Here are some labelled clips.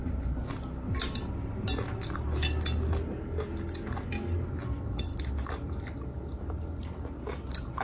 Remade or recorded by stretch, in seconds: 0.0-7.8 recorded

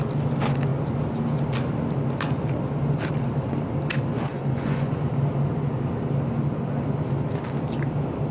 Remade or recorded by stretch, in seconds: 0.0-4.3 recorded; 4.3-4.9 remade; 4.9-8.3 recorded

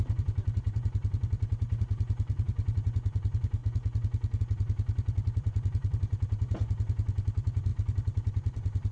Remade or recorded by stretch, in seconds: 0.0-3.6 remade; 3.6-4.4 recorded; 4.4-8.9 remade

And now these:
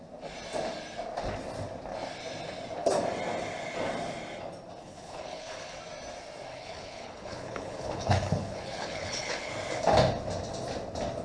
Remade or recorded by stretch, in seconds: 0.0-4.8 recorded; 4.8-5.8 remade; 5.8-6.5 recorded; 6.5-9.5 remade; 9.5-11.2 recorded

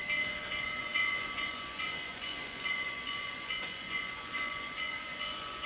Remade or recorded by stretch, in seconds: 0.0-5.7 remade

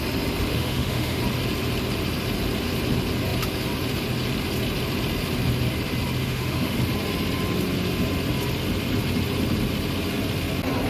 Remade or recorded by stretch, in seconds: 0.0-0.5 recorded; 0.5-1.2 remade; 1.2-6.2 recorded; 6.2-6.8 remade; 6.8-10.9 recorded

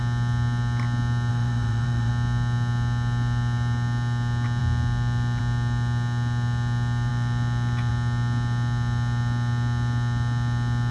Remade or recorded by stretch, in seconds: 0.0-1.3 recorded; 1.3-2.1 remade; 2.1-10.9 recorded

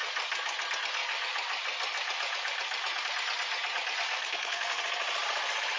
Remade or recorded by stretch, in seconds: 0.0-4.1 recorded; 4.1-4.8 remade; 4.8-5.8 recorded